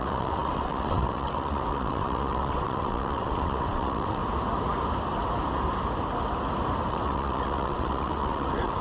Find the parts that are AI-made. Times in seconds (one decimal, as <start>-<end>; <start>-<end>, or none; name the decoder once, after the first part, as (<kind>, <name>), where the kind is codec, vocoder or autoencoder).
0.0-4.2 (vocoder, WaveNeXt); 6.9-8.8

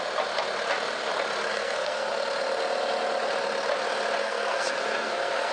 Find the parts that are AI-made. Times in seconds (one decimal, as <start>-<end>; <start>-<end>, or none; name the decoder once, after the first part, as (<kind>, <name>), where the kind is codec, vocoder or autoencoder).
1.5-2.1 (codec, SNAC); 4.2-5.5

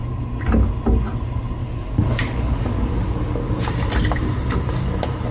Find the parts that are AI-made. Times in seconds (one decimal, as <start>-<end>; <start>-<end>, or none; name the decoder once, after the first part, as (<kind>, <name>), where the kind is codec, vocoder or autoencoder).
1.6-3.7 (codec, DAC)

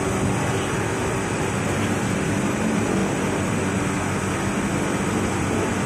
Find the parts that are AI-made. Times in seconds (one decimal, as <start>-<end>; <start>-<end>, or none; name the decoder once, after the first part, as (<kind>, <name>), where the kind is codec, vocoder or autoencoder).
1.0-2.6 (vocoder, BigVGAN v2); 3.0-3.6

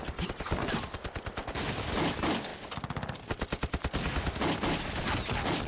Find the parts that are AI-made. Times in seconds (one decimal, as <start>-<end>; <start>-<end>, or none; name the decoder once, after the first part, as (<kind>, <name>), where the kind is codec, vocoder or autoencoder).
none

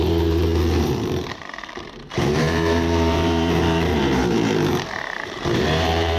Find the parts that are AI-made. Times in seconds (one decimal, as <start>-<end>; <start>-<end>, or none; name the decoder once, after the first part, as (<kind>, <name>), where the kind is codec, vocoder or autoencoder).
0.0-0.5 (vocoder, BigVGAN v2); 1.3-6.2

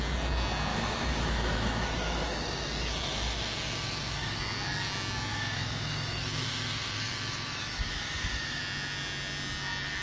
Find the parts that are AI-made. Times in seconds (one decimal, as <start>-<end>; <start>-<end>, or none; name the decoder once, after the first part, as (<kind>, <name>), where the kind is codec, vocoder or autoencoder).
0.7-4.4 (autoencoder, DAC-VAE); 5.3-8.6

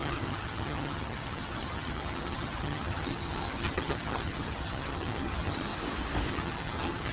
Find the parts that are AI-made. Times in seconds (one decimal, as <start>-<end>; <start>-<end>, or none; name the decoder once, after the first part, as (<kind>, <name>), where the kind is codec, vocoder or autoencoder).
0.0-5.7 (vocoder, HiFi-GAN); 6.3-7.1